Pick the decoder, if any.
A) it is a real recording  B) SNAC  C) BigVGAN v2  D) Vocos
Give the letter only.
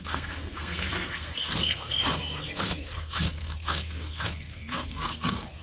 B